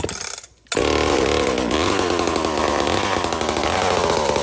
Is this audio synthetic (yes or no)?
no